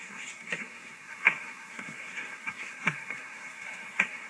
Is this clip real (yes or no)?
no